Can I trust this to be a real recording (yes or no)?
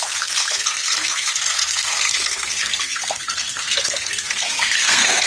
no